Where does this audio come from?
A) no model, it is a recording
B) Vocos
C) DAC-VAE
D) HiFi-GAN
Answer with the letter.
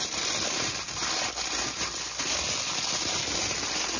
A